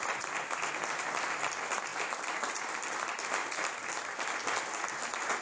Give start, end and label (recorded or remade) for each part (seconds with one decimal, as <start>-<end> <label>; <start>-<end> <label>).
0.0-5.4 recorded